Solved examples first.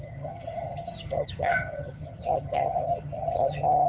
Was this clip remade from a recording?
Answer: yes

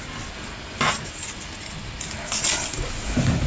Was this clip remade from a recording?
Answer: no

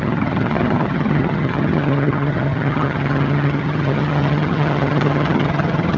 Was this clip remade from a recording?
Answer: yes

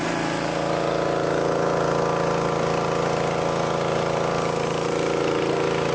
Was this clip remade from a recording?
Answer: no